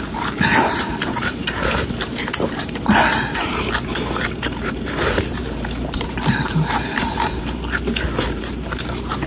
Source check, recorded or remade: remade